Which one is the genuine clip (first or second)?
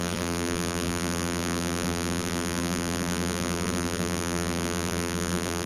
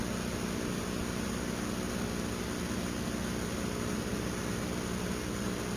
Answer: second